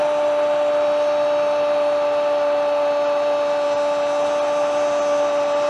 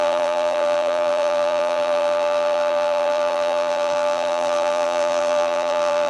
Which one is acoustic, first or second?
first